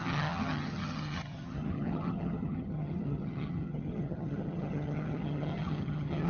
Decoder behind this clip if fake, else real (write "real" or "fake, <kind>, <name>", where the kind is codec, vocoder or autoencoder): fake, vocoder, HiFi-GAN